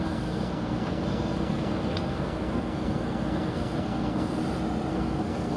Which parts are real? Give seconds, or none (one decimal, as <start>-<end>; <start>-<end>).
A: 4.4-4.9